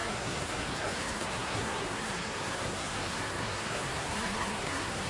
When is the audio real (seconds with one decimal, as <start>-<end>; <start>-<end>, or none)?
none